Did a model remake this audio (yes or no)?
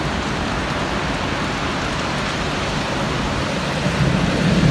no